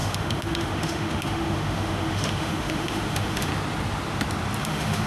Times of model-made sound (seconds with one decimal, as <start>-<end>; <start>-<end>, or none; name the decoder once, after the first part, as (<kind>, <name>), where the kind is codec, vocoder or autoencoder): 0.0-3.5 (autoencoder, DAC-VAE); 4.6-5.1